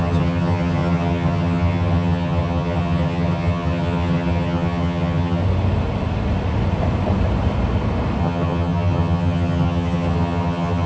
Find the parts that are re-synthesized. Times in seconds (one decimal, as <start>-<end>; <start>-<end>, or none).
0.0-5.4; 8.2-10.9